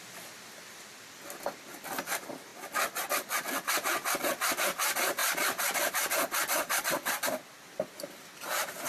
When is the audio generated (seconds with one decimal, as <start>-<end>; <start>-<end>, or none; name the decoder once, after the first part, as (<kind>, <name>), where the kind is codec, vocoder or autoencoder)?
0.0-2.5 (vocoder, BigVGAN v2); 3.2-8.9